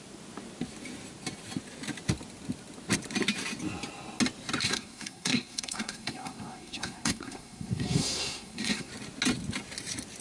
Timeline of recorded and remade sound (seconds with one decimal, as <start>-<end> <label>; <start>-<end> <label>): 0.0-4.6 recorded; 4.6-8.9 remade; 8.9-10.2 recorded